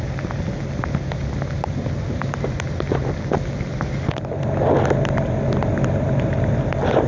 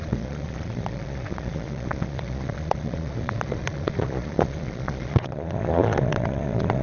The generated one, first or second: second